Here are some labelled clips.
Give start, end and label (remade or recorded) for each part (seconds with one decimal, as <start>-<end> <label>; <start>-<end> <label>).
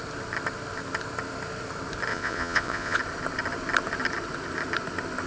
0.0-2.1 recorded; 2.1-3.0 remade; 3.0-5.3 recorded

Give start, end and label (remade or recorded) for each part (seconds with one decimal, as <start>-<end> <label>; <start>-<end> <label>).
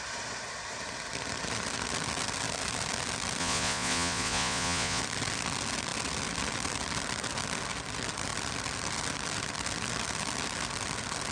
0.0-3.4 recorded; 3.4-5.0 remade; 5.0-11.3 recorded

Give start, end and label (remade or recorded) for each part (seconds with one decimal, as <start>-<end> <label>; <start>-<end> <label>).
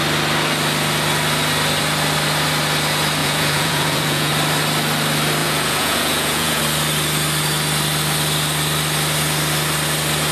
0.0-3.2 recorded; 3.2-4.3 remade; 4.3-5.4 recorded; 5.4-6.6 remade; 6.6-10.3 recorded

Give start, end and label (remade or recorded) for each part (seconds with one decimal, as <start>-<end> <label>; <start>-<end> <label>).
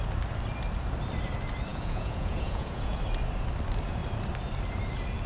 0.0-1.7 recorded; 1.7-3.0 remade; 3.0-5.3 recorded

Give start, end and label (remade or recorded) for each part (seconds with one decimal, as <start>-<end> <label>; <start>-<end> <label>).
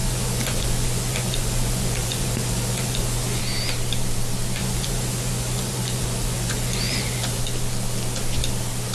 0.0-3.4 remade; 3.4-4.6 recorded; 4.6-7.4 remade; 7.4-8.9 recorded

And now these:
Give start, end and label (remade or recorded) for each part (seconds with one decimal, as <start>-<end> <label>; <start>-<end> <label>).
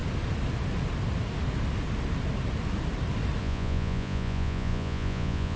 0.0-3.4 recorded; 3.4-5.6 remade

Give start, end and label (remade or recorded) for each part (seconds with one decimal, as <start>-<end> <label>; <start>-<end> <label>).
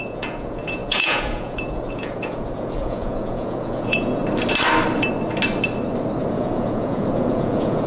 0.0-4.2 remade; 4.2-6.3 recorded; 6.3-7.9 remade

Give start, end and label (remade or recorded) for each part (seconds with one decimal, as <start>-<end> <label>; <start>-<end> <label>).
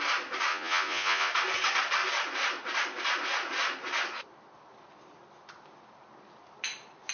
0.0-0.5 recorded; 0.5-1.3 remade; 1.3-7.1 recorded